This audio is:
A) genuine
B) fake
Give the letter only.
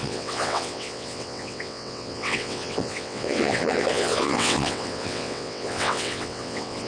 B